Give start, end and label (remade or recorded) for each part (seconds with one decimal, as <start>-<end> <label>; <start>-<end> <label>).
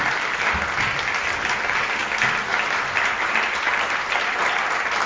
0.0-2.0 recorded; 2.0-4.4 remade; 4.4-5.1 recorded